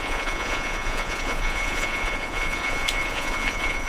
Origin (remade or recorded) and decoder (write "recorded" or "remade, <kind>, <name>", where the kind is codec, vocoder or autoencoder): remade, vocoder, Vocos